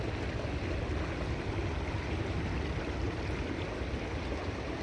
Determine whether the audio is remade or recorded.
recorded